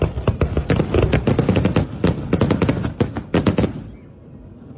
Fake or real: real